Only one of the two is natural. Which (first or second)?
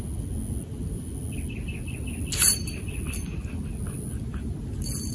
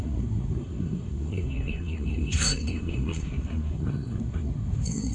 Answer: first